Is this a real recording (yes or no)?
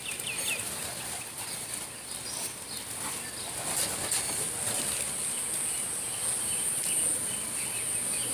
yes